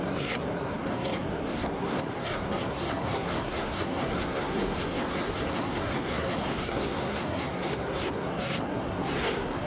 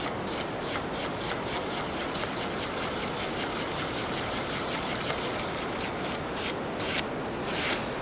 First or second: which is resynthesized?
first